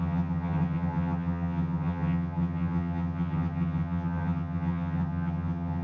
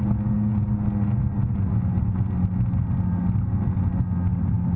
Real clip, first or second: second